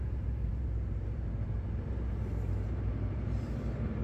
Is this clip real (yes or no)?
no